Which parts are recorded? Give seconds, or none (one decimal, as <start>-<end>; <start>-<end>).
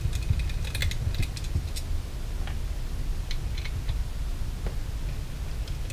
0.0-5.9